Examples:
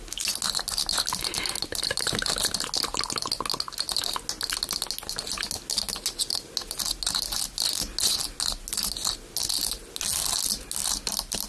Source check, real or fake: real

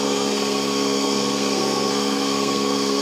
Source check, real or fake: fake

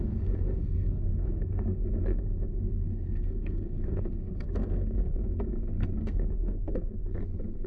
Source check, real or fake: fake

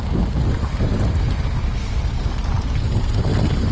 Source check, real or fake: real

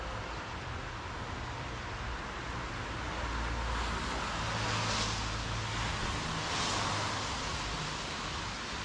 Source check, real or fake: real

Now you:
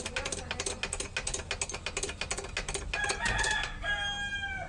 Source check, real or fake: real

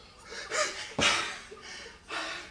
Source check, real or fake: real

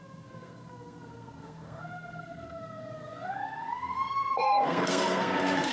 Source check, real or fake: fake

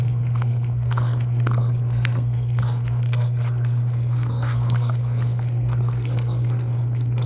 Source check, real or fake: fake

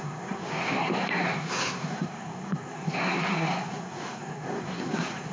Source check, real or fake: fake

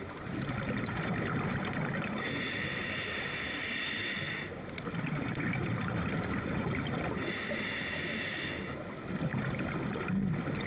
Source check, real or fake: real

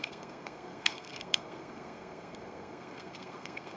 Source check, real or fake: fake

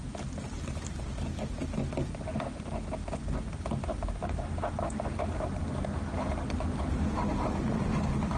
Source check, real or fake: real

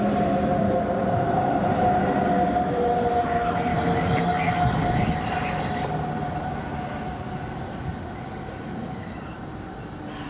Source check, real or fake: real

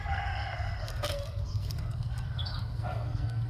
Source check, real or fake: fake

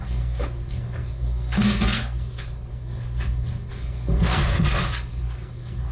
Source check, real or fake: fake